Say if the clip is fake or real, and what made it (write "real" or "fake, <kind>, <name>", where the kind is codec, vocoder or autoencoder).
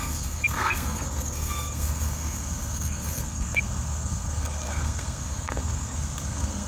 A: fake, codec, SNAC